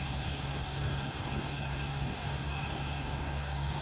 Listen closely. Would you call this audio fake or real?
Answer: fake